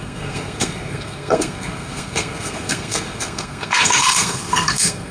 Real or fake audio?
fake